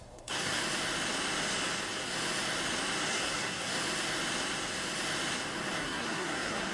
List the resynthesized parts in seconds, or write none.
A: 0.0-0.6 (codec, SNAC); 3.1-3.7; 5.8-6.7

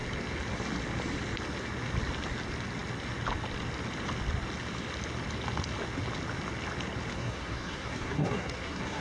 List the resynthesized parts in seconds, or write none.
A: 7.1-9.0 (codec, SNAC)

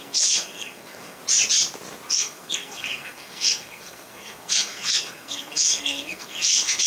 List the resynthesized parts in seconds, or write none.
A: 0.0-1.2 (codec, SNAC); 2.1-6.9

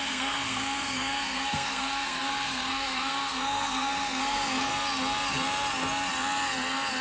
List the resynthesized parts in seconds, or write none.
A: 0.0-4.7 (codec, SNAC)

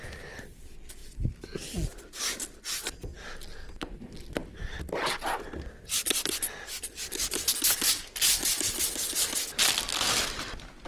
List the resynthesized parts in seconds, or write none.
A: none

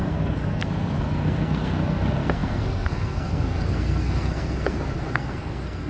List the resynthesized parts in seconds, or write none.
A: 0.0-5.9 (codec, SNAC)

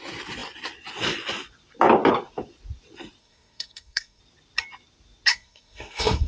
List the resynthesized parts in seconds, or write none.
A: 3.2-4.2 (codec, SNAC); 5.3-6.3

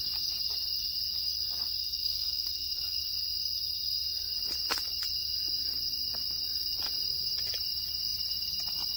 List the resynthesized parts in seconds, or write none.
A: 1.8-3.0 (codec, SNAC)